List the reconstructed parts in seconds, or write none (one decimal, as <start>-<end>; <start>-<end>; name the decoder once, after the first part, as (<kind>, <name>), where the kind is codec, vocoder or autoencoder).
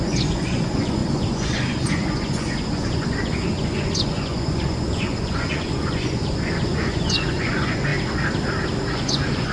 0.0-7.9 (vocoder, Vocos); 8.9-9.5